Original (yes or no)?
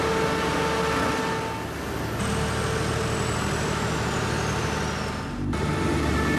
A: yes